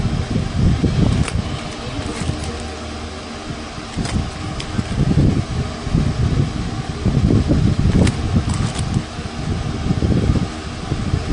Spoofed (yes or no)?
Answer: no